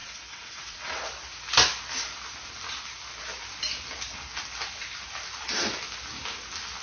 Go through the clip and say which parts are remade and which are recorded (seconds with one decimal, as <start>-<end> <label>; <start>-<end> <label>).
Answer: 0.0-1.0 remade; 1.0-6.8 recorded